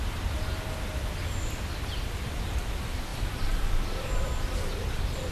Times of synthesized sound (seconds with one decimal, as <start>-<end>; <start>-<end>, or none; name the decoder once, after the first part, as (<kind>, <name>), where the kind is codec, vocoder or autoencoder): 3.1-3.7 (vocoder, BigVGAN v2)